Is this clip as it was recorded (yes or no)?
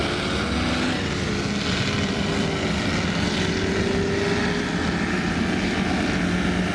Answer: yes